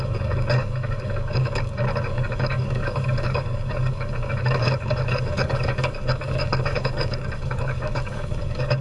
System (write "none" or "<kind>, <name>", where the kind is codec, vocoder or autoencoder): codec, DAC